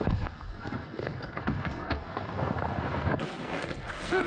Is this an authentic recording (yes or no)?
no